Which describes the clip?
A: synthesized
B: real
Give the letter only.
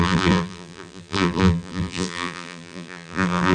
A